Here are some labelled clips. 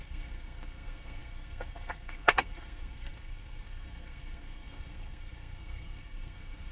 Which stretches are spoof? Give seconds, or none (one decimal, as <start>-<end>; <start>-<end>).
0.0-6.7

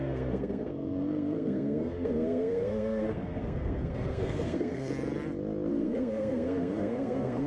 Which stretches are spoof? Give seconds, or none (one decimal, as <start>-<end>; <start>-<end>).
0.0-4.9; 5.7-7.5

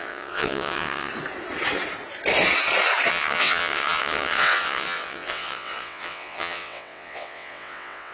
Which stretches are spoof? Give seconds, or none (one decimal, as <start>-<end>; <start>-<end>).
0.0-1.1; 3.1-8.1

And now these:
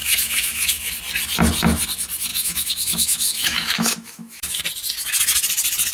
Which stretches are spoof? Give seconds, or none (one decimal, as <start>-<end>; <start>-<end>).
0.0-0.9; 2.3-4.6

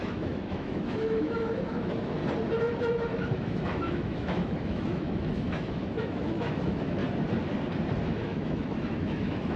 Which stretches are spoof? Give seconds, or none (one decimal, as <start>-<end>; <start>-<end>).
0.0-2.2; 2.8-7.0; 8.0-9.6